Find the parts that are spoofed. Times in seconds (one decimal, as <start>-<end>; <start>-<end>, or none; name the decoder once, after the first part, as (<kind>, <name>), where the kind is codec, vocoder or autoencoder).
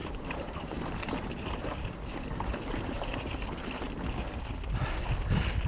0.0-3.4 (vocoder, BigVGAN v2)